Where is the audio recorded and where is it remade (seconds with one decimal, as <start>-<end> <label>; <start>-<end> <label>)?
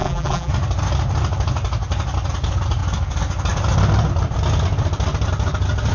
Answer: 0.0-0.5 remade; 0.5-5.9 recorded